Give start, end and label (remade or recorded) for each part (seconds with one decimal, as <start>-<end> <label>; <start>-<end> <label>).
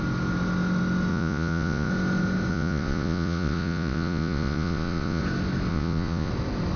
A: 0.0-1.1 recorded; 1.1-1.9 remade; 1.9-2.5 recorded; 2.5-5.2 remade; 5.2-5.7 recorded; 5.7-6.3 remade; 6.3-6.8 recorded